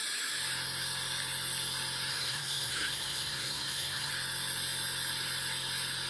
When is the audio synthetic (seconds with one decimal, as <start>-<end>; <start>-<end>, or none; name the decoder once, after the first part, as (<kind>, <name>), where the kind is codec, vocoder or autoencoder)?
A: 2.1-4.1 (codec, SNAC)